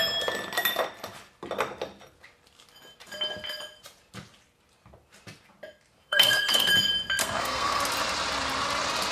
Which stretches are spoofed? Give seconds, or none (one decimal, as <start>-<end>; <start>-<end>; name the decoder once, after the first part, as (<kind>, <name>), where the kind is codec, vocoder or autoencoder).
6.0-6.7 (codec, SNAC); 7.2-7.8